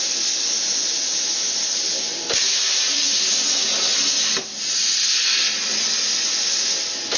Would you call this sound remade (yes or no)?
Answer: no